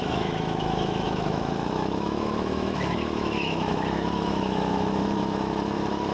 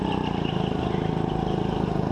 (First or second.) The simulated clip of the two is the first